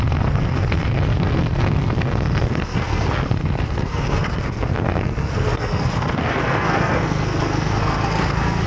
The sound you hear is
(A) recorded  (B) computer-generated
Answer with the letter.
B